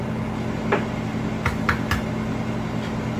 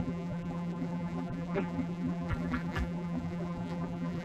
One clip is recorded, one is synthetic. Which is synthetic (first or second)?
second